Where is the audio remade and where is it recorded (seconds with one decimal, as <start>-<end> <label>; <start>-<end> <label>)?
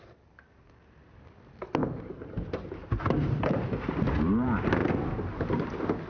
0.0-1.8 recorded; 1.8-4.0 remade; 4.0-6.1 recorded